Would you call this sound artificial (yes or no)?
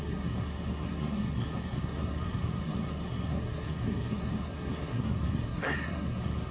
yes